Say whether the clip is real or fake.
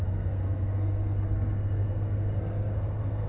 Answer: fake